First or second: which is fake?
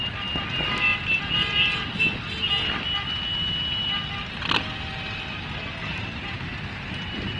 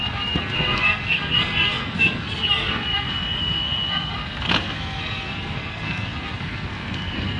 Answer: second